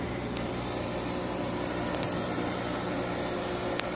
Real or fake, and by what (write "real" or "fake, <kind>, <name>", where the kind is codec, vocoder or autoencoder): real